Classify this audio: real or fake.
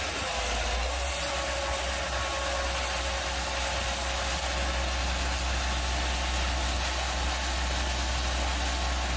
real